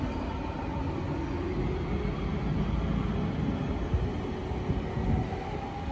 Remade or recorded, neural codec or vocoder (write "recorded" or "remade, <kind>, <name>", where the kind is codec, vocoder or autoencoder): recorded